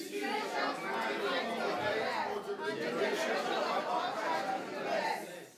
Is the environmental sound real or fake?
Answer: real